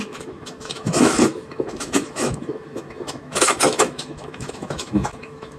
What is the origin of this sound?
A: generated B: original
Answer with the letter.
A